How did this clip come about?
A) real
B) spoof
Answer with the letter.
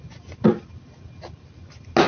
A